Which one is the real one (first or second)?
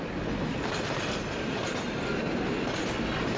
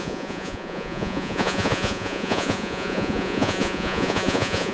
first